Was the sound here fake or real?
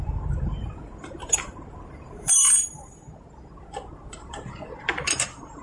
fake